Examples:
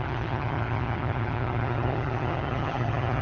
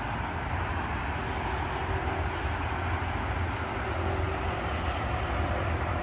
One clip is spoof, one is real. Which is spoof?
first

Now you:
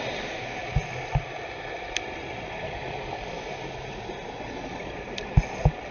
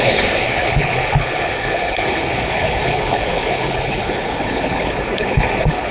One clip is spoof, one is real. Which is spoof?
second